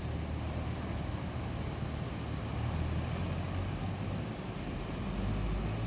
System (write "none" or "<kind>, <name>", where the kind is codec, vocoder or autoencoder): none